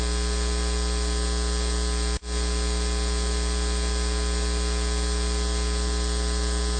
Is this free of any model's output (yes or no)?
yes